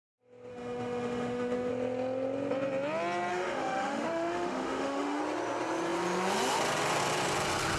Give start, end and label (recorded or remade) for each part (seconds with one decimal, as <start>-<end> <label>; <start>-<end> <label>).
0.0-0.5 recorded; 0.5-1.7 remade; 1.7-3.3 recorded; 3.3-5.2 remade; 5.2-7.8 recorded